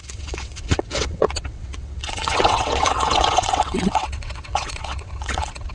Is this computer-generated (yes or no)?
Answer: yes